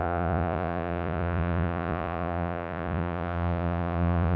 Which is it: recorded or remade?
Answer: remade